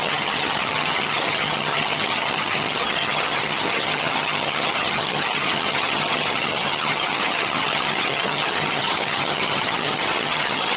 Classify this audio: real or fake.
fake